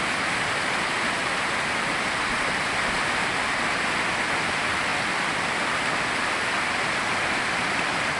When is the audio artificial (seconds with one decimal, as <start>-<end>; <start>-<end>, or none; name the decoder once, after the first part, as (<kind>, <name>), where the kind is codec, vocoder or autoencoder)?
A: none